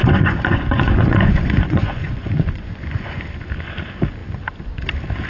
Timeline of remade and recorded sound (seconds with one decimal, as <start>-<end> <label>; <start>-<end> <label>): 0.0-3.2 remade; 3.2-5.3 recorded